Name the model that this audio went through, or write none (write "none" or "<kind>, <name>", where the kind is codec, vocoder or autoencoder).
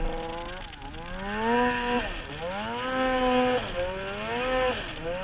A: none